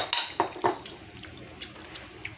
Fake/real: real